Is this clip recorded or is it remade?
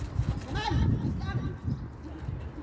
recorded